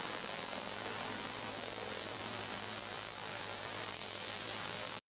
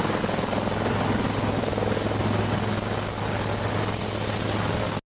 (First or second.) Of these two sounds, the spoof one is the first